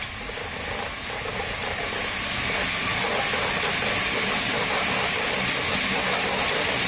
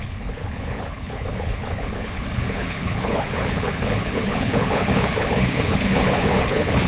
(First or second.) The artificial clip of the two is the second